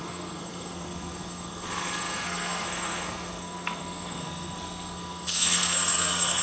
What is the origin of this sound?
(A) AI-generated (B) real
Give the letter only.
A